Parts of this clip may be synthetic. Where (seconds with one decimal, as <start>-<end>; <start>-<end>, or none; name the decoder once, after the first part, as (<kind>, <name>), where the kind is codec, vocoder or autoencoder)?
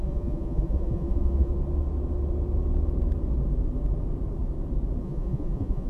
0.0-1.5 (vocoder, Vocos); 5.0-5.9